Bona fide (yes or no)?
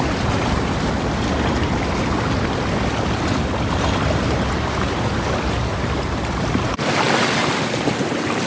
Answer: yes